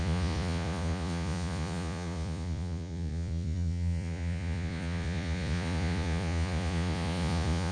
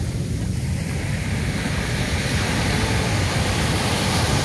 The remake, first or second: first